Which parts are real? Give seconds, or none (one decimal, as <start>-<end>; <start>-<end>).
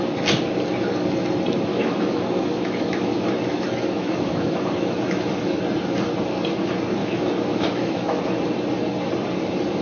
0.0-1.7; 5.6-7.0; 8.2-9.8